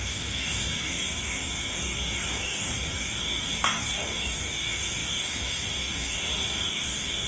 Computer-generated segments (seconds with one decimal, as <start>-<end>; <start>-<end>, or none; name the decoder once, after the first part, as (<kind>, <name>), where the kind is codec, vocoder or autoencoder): 0.0-7.3 (codec, DAC)